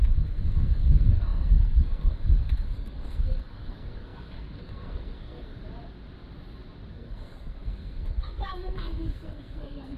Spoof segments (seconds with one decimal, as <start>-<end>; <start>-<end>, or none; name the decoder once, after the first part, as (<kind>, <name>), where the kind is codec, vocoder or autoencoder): 0.0-5.6 (codec, SNAC); 6.9-10.0